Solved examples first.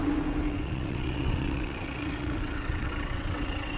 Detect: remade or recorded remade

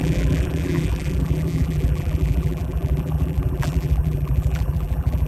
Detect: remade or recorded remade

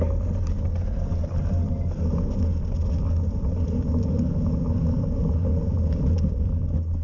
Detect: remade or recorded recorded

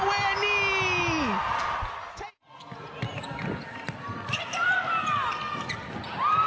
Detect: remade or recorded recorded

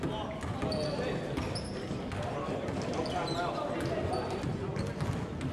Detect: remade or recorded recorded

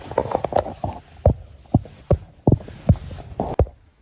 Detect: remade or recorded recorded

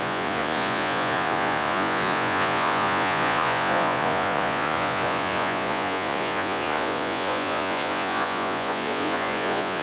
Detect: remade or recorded remade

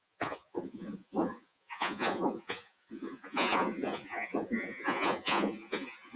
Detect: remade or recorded remade